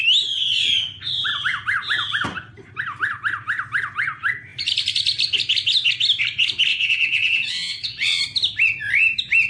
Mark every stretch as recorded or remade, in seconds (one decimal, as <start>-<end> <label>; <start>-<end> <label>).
0.0-6.7 recorded; 6.7-8.2 remade; 8.2-9.5 recorded